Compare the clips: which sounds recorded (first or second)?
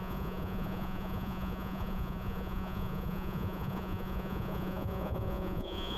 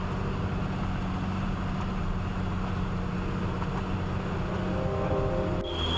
second